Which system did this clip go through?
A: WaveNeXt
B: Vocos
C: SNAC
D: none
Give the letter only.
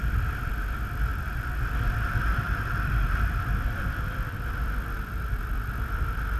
D